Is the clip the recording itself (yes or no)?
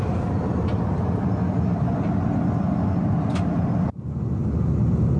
yes